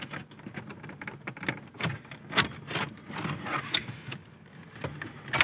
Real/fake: real